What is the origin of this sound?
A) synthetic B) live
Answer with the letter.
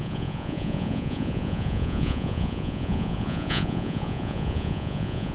A